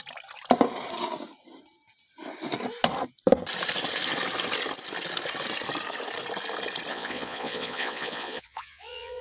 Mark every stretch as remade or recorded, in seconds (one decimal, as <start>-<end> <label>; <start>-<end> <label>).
0.0-6.9 recorded; 6.9-9.2 remade